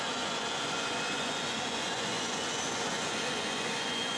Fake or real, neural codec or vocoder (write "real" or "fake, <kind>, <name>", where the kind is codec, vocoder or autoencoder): fake, vocoder, Vocos